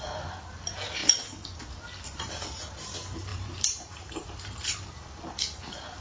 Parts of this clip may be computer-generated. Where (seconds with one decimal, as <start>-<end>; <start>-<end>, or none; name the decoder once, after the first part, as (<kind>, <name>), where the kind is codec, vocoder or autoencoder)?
3.3-4.3 (vocoder, BigVGAN v2)